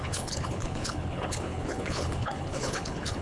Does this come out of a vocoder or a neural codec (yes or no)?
yes